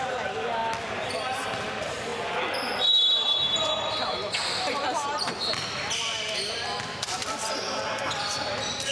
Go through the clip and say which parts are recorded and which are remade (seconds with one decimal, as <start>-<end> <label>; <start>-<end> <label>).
0.0-0.6 remade; 0.6-1.1 recorded; 1.1-2.1 remade; 2.1-6.5 recorded; 6.5-8.9 remade